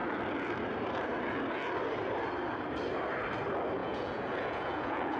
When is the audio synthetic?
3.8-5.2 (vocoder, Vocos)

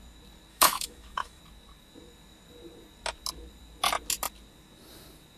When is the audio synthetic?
0.5-1.4 (autoencoder, DAC-VAE)

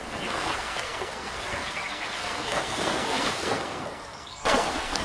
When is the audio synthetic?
0.0-5.0 (codec, SNAC)

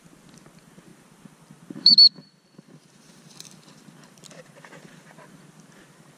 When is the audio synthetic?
0.9-4.6 (vocoder, BigVGAN v2)

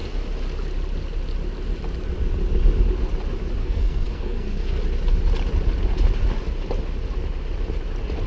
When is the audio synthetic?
3.6-4.8 (codec, SNAC)

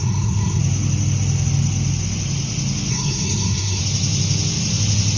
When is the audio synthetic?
0.0-0.6 (codec, SNAC); 2.9-3.8

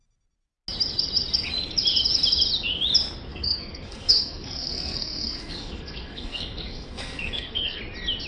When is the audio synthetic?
3.3-7.8 (codec, SNAC)

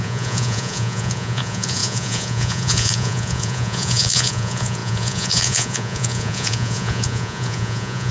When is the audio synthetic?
0.0-8.1 (vocoder, Vocos)